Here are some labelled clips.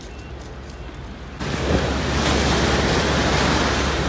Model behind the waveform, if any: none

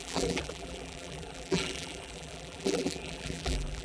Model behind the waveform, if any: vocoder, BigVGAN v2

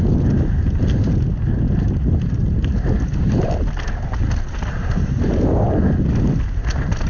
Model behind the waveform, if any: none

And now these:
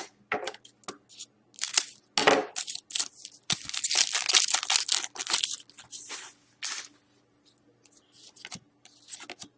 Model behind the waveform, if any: none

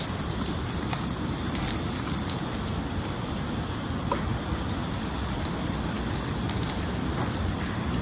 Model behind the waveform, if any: none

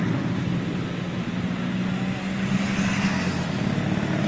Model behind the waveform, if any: none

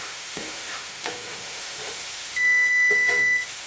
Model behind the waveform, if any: autoencoder, DAC-VAE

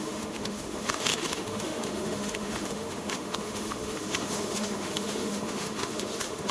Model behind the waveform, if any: autoencoder, DAC-VAE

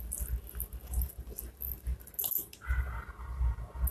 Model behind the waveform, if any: none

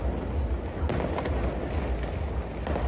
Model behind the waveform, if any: none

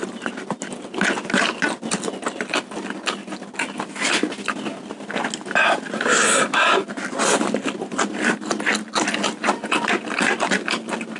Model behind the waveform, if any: none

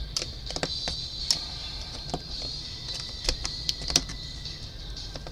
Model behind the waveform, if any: vocoder, BigVGAN v2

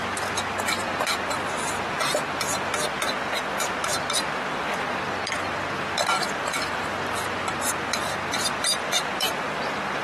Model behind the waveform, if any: vocoder, BigVGAN v2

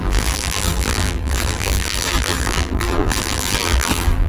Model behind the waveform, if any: vocoder, BigVGAN v2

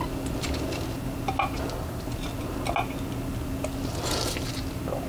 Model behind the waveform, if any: none